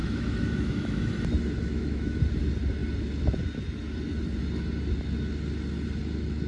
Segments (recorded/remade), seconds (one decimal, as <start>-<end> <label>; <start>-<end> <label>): 0.0-1.1 remade; 1.1-1.6 recorded; 1.6-2.2 remade; 2.2-6.5 recorded